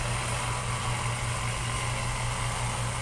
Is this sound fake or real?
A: real